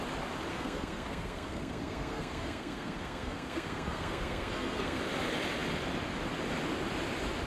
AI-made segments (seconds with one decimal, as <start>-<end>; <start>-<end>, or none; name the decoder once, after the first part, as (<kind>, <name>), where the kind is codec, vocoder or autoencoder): 0.5-5.0 (codec, SNAC)